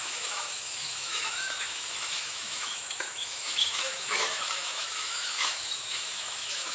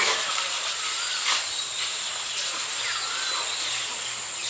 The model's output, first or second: first